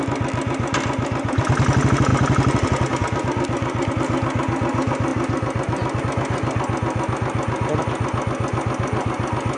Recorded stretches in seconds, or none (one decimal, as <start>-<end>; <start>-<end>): 0.0-9.6